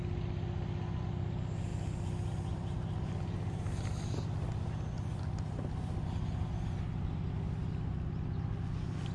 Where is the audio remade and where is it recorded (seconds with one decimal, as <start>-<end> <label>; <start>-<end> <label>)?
0.0-9.1 recorded